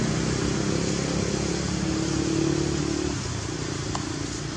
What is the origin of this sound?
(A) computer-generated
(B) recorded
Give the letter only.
B